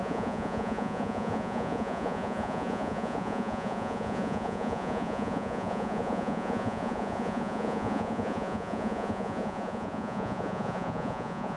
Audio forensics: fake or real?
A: fake